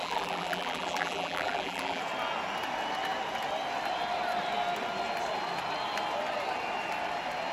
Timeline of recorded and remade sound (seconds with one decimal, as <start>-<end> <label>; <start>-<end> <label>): 0.0-2.0 remade; 2.0-7.5 recorded